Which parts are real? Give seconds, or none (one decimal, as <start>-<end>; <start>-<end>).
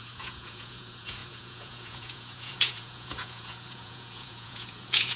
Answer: none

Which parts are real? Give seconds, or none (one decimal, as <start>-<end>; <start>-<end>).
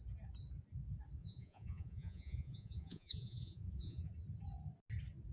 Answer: 0.0-1.2; 4.1-5.3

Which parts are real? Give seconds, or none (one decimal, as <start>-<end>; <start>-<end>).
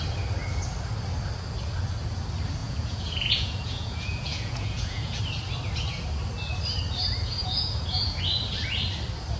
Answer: 0.0-2.6; 5.2-7.4; 8.2-9.4